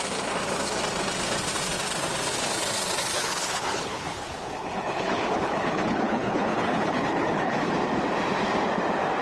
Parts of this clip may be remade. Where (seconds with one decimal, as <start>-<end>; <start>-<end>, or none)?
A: 3.2-7.7

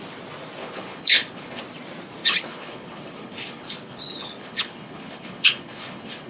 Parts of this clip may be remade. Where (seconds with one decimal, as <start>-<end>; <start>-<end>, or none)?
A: 0.6-1.6; 2.2-6.3

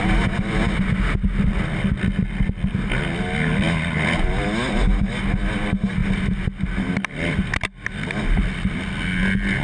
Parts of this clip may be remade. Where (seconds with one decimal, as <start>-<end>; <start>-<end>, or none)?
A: none

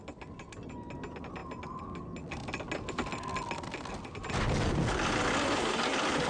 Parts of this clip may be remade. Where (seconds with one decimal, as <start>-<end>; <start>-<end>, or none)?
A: none

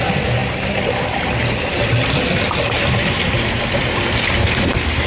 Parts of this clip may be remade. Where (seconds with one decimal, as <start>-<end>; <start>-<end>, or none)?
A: none

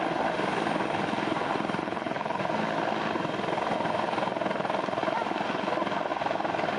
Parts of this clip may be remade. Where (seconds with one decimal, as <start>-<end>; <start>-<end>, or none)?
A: 1.8-2.4

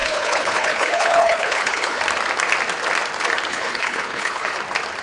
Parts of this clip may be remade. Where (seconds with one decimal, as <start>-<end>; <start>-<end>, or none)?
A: 0.0-2.0; 3.5-4.6

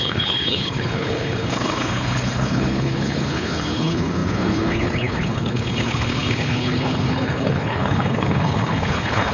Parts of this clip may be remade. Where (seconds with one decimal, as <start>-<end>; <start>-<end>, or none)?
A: 0.0-9.3